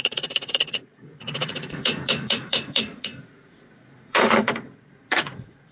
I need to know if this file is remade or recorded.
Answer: remade